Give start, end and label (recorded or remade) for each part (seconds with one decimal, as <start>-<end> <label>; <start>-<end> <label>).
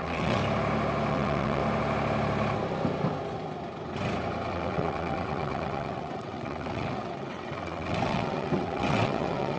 0.0-0.4 remade; 0.4-1.1 recorded; 1.1-1.6 remade; 1.6-4.5 recorded; 4.5-9.6 remade